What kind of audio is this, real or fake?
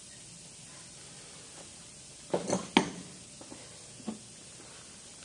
real